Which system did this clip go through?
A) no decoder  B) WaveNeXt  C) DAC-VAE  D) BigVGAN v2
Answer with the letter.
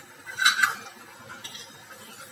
A